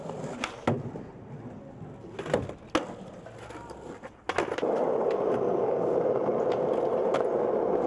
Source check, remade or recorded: recorded